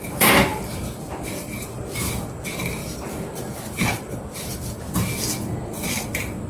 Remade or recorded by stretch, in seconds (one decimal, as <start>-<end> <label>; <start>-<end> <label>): 0.0-2.8 recorded; 2.8-4.8 remade; 4.8-6.5 recorded